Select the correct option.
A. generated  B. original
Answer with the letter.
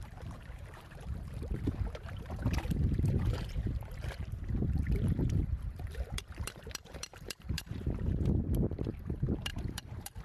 A